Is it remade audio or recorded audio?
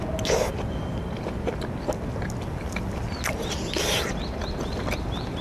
recorded